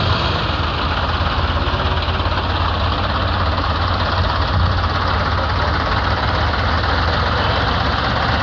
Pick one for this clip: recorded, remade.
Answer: recorded